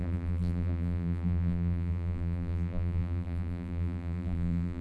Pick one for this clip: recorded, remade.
remade